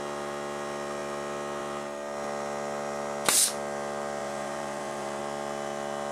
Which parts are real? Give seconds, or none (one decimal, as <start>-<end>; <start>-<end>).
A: 0.0-4.2; 5.2-6.1